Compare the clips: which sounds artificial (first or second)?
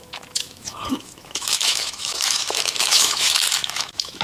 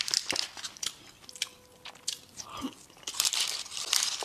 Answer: first